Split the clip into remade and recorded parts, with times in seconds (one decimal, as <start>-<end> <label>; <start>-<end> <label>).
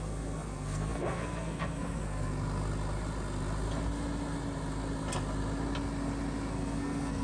0.0-2.3 remade; 2.3-6.5 recorded; 6.5-7.2 remade